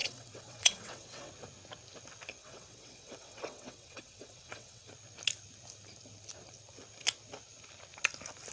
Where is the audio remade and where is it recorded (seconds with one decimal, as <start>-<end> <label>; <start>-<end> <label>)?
0.0-1.3 remade; 1.3-2.4 recorded; 2.4-4.9 remade; 4.9-8.5 recorded

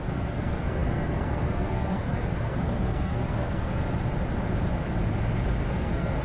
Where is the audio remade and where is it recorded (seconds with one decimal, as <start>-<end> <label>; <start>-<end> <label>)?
0.0-3.8 remade; 3.8-5.7 recorded; 5.7-6.2 remade